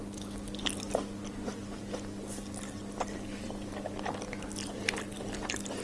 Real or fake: real